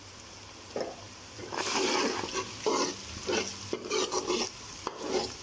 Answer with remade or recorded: recorded